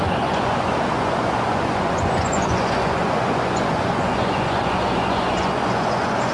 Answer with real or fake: fake